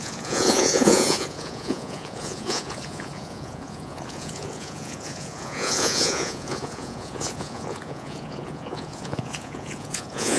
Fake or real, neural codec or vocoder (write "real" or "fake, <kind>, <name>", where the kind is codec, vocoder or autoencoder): fake, vocoder, Vocos